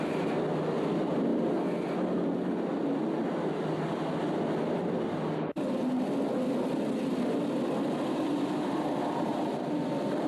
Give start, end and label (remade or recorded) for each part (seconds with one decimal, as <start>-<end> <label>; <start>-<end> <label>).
0.0-10.3 recorded